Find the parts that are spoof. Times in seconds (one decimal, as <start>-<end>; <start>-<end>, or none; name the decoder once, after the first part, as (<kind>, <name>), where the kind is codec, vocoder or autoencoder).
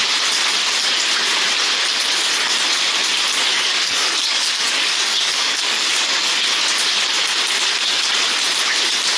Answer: 3.5-6.3 (codec, DAC)